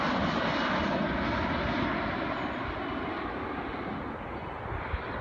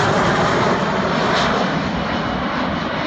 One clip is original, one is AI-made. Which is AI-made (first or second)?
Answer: second